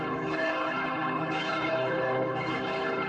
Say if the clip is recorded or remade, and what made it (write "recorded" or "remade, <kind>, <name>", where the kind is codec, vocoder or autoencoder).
remade, codec, HILCodec